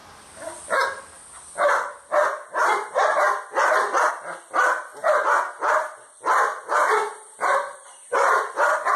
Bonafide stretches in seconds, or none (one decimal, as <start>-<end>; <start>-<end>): 0.0-9.0